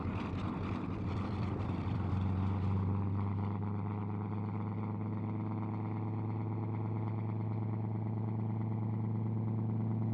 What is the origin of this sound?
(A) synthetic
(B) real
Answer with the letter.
B